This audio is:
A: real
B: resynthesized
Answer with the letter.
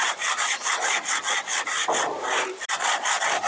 A